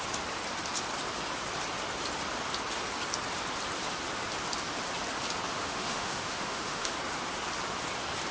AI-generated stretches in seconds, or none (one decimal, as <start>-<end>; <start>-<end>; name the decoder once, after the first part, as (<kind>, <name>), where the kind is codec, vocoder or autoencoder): 5.5-6.9 (autoencoder, DAC-VAE)